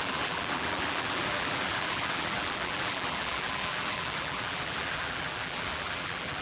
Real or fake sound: fake